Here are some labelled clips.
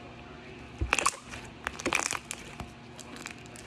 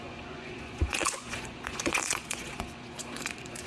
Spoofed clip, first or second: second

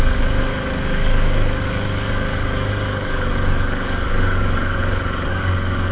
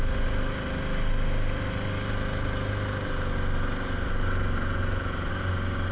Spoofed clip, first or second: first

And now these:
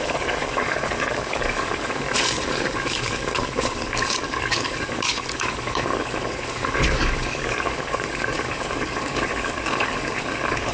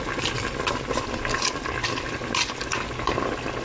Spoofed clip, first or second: first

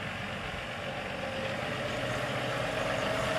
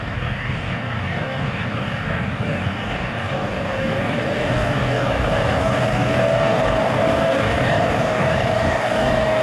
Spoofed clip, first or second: second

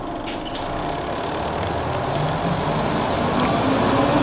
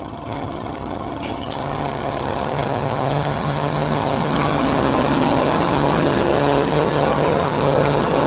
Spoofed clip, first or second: second